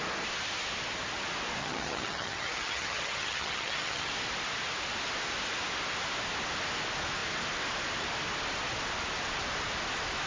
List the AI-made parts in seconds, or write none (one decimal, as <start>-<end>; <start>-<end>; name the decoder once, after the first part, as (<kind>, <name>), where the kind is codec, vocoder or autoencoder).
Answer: 1.6-4.1 (vocoder, HiFi-GAN)